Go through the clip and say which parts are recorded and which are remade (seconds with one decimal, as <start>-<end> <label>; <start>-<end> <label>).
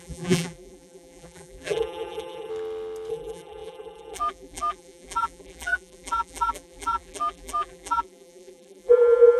0.0-2.5 remade; 2.5-3.1 recorded; 3.1-9.4 remade